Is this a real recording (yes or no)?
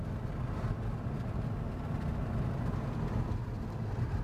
yes